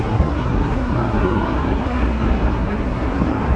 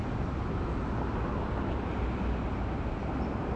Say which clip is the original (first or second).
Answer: second